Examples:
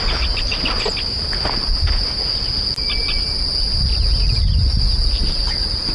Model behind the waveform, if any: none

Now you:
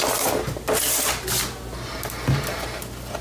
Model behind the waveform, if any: none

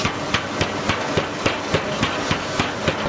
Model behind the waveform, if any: none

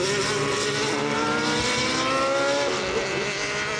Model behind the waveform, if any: none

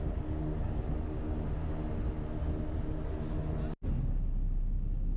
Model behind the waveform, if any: none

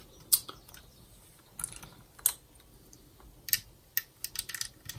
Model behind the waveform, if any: none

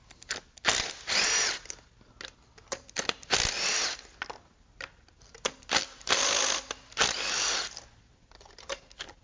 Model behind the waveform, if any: none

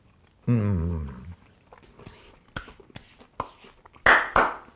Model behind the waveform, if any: none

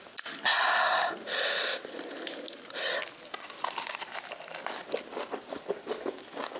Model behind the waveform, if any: none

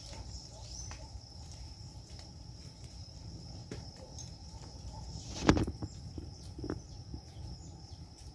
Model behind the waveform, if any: vocoder, BigVGAN v2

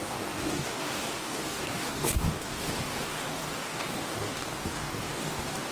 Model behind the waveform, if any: codec, DAC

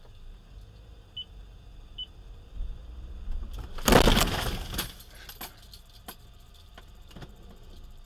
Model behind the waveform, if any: none